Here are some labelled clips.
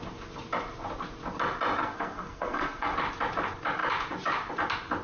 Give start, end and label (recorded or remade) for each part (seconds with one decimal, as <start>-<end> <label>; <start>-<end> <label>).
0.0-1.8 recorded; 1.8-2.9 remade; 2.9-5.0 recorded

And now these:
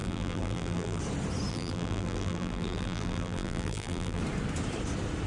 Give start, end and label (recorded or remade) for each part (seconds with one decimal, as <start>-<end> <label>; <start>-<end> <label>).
0.0-1.0 remade; 1.0-1.5 recorded; 1.5-4.2 remade; 4.2-5.3 recorded

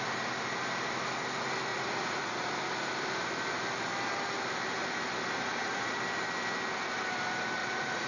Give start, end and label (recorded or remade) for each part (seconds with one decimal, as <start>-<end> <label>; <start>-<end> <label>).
0.0-1.7 recorded; 1.7-2.5 remade; 2.5-5.4 recorded; 5.4-6.0 remade; 6.0-7.6 recorded; 7.6-8.1 remade